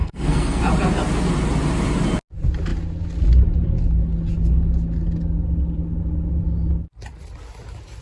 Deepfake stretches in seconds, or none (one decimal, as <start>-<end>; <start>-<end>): 0.0-0.6